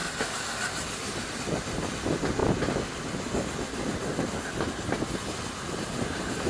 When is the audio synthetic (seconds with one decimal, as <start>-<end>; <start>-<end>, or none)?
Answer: none

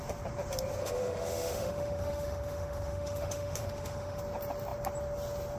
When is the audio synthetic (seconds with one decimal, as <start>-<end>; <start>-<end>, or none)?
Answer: 0.8-4.2

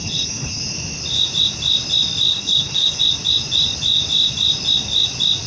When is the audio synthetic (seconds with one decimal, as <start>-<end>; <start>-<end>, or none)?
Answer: 0.0-0.6; 2.3-3.0

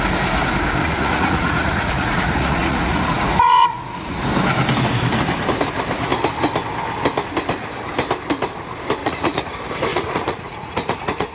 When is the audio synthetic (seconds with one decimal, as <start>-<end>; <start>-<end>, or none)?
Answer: 0.8-4.2; 9.0-9.5; 9.9-11.3

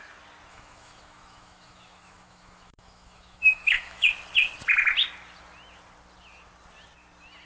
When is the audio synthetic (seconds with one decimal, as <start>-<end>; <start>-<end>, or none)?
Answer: 0.5-4.1

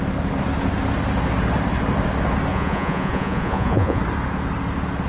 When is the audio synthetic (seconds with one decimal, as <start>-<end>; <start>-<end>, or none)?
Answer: 2.5-4.0